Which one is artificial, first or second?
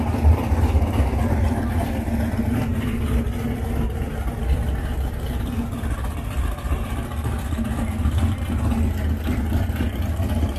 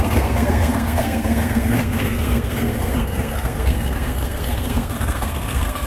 second